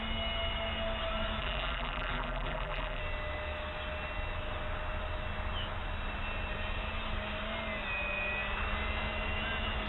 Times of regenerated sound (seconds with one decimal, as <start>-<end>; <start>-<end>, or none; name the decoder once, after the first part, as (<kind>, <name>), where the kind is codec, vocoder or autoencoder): 1.4-3.0 (vocoder, BigVGAN v2)